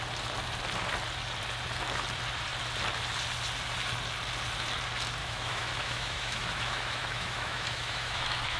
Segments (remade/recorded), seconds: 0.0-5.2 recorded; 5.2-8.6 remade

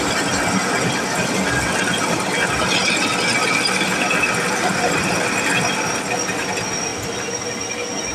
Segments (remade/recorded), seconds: 0.0-8.1 recorded

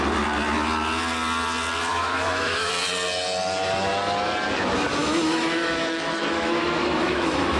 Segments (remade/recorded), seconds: 0.0-1.9 recorded; 1.9-2.7 remade; 2.7-5.0 recorded; 5.0-7.6 remade

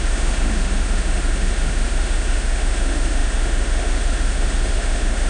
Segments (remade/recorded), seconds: 0.0-5.3 remade